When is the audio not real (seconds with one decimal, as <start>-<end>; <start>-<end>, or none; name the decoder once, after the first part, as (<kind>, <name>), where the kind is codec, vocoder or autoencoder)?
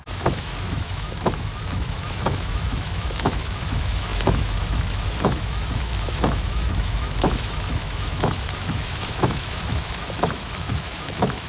0.0-11.5 (autoencoder, DAC-VAE)